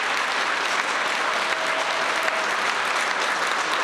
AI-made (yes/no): no